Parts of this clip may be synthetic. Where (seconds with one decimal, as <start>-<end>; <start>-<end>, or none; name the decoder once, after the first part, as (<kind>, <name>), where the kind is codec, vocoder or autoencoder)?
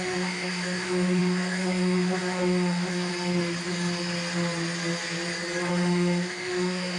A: 0.0-3.1 (autoencoder, DAC-VAE); 5.7-7.0